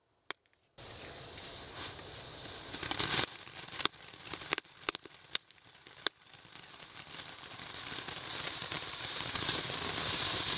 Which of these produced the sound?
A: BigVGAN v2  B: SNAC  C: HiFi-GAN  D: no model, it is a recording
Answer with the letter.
A